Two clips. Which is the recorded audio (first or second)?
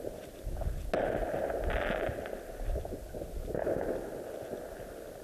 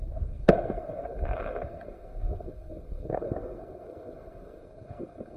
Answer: first